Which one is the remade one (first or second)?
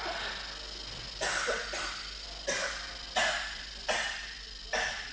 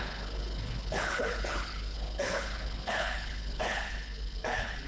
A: second